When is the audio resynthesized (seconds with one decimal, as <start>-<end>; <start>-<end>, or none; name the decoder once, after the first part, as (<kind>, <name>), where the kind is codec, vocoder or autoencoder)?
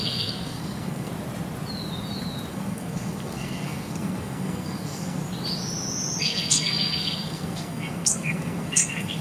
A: 0.0-1.1 (codec, SNAC); 2.5-5.2; 6.2-9.2